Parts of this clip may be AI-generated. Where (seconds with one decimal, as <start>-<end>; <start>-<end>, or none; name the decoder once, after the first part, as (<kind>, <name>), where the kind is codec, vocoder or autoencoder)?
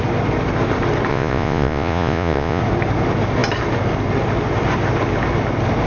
1.1-2.6 (vocoder, Vocos)